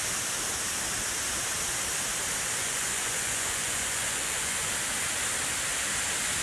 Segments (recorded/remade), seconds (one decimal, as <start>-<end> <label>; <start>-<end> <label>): 0.0-2.6 recorded; 2.6-4.7 remade; 4.7-6.4 recorded